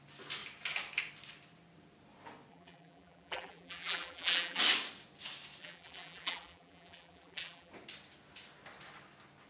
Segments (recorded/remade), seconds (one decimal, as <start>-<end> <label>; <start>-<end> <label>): 0.0-2.5 recorded; 2.5-4.6 remade; 4.6-5.6 recorded; 5.6-7.7 remade; 7.7-9.5 recorded